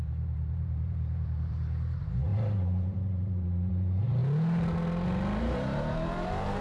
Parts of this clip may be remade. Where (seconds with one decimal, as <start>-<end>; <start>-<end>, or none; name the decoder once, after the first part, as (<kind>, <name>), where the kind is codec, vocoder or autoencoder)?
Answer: 0.0-4.2 (vocoder, BigVGAN v2); 5.4-6.6